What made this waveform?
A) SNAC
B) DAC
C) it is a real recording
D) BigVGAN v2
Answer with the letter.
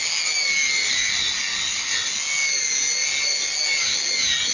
C